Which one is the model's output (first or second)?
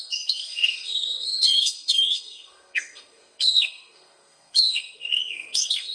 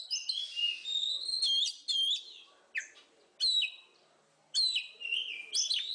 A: first